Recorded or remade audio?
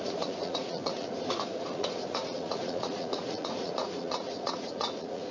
remade